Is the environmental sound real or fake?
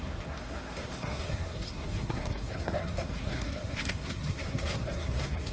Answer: fake